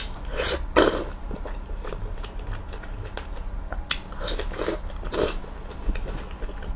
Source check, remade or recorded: recorded